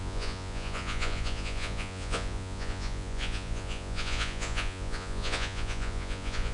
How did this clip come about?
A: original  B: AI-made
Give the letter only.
B